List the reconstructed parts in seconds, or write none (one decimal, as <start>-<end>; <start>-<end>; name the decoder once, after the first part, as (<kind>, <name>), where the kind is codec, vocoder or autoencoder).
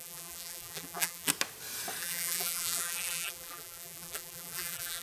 0.0-1.3 (vocoder, BigVGAN v2); 2.0-5.0